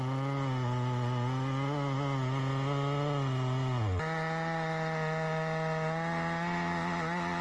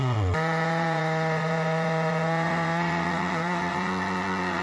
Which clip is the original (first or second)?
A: first